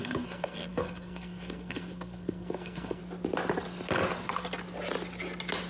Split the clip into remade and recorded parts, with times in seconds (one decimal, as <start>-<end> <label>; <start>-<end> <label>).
0.0-3.0 remade; 3.0-5.7 recorded